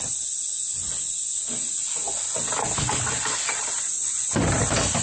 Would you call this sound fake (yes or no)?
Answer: no